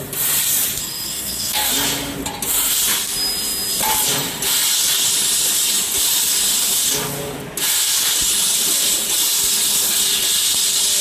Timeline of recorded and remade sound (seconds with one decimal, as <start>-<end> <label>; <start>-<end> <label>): 0.0-0.8 recorded; 0.8-1.7 remade; 1.7-11.0 recorded